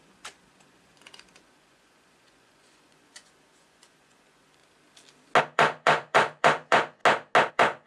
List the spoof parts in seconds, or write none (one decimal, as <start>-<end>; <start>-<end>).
0.0-4.6; 5.4-7.0; 7.5-7.9